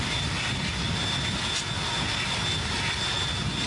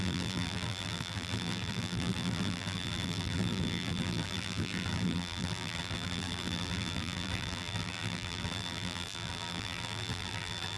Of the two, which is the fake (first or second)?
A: second